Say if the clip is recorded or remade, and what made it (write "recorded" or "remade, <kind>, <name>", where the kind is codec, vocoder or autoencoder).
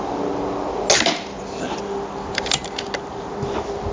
recorded